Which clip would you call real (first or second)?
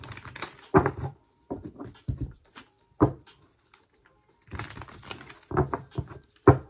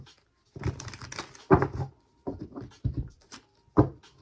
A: second